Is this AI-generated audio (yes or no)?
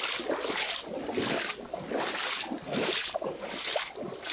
no